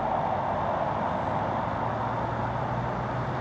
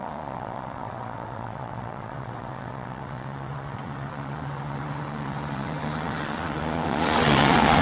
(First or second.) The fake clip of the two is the second